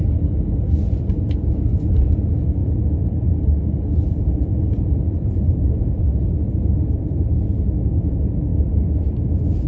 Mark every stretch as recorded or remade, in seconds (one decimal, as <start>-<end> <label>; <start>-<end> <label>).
0.0-4.5 recorded; 4.5-6.0 remade; 6.0-8.5 recorded; 8.5-9.7 remade